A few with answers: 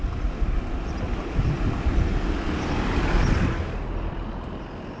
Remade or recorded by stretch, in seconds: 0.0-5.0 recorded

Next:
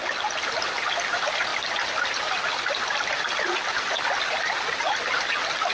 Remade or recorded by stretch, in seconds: 0.0-5.7 recorded

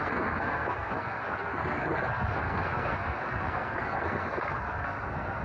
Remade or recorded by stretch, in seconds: 0.0-5.4 remade